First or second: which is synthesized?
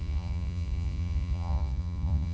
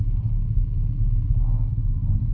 first